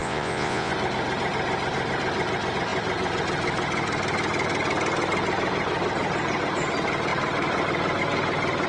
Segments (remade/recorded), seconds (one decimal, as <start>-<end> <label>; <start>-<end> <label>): 0.0-0.7 remade; 0.7-8.7 recorded